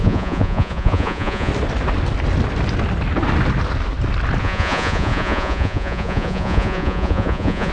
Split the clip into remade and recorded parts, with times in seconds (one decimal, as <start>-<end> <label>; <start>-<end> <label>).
0.0-1.5 remade; 1.5-4.4 recorded; 4.4-7.7 remade